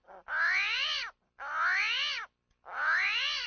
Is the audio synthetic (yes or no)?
no